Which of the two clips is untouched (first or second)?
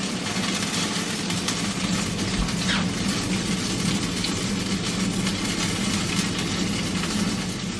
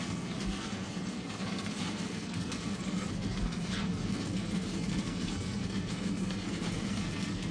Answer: first